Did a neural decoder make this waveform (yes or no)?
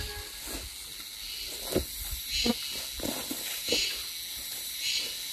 no